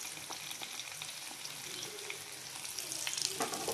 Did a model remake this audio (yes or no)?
no